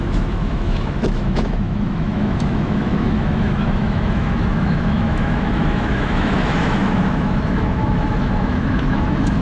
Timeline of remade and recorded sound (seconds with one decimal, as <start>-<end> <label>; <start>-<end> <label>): 0.0-9.4 remade